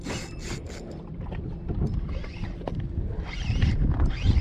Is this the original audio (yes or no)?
yes